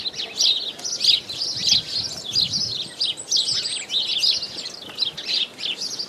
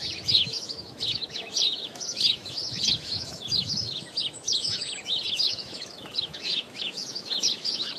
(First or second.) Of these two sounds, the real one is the first